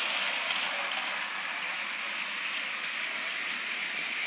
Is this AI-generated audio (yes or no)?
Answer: no